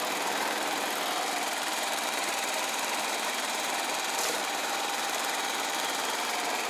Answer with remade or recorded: remade